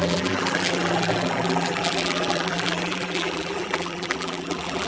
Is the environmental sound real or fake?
fake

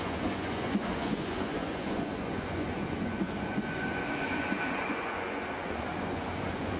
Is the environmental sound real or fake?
fake